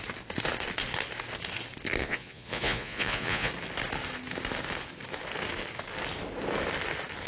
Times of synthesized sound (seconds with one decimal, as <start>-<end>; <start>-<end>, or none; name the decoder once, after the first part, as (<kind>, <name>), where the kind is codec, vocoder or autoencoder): 2.0-3.5 (vocoder, Vocos)

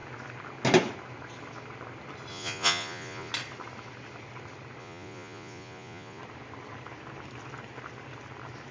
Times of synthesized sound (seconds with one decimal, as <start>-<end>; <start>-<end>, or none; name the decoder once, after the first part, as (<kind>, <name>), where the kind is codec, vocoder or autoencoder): 2.3-3.3 (vocoder, Vocos); 4.8-6.2

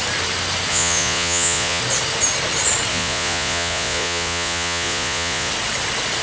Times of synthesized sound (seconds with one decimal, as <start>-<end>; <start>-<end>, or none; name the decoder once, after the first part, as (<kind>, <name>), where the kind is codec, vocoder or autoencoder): 0.7-1.8 (vocoder, Vocos); 2.9-5.5

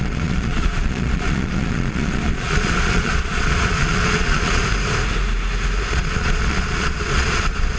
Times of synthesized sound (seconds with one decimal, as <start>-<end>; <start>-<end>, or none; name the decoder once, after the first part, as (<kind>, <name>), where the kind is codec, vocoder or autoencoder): 0.0-4.6 (vocoder, Vocos); 5.9-7.8

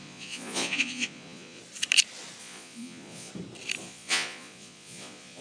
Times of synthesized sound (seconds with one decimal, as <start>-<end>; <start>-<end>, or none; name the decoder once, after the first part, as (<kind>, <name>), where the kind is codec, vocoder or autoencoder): 0.0-1.6 (vocoder, Vocos); 2.4-3.3; 3.8-5.4

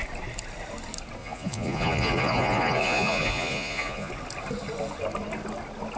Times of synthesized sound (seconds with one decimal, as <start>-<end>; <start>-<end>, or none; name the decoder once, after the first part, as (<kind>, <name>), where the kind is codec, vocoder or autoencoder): 1.2-4.1 (vocoder, Vocos)

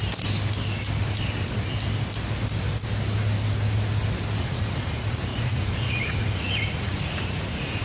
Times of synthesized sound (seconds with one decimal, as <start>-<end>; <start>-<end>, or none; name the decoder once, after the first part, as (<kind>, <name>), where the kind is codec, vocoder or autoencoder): 4.4-7.8 (vocoder, Vocos)

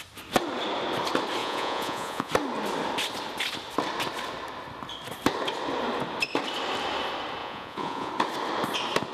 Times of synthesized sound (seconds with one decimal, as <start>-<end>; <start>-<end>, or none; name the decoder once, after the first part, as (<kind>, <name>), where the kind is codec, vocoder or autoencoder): 1.4-2.3 (vocoder, Vocos); 7.4-8.1